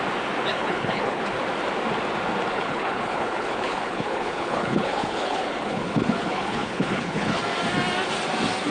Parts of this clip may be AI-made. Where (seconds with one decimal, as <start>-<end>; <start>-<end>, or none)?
0.5-1.2; 2.5-7.4

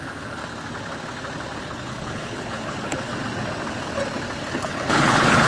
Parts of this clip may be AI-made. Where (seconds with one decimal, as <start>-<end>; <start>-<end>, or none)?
0.0-0.4; 1.6-3.1; 4.5-5.5

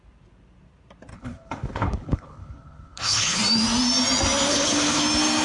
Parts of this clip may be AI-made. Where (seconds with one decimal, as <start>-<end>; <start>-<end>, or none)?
1.1-3.4; 4.5-5.0

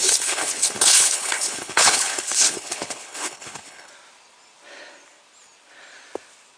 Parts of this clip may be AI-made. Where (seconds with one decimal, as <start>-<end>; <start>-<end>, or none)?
0.0-3.9

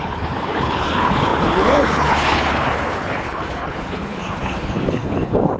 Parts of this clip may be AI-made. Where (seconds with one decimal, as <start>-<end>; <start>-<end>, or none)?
0.0-5.6